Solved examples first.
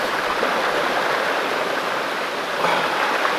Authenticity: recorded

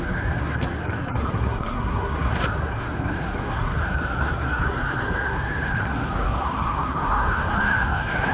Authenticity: remade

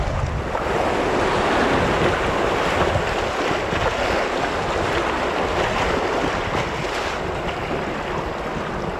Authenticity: recorded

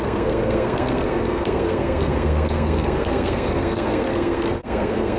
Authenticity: remade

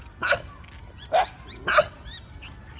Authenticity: recorded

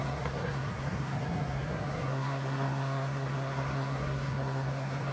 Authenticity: remade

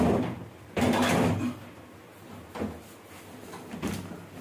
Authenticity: recorded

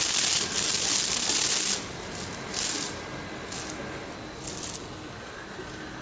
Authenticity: recorded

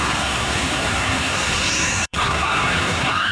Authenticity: remade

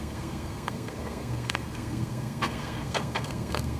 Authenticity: remade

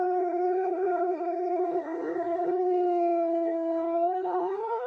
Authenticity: remade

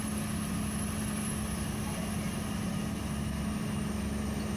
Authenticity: recorded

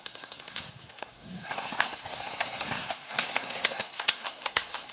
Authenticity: remade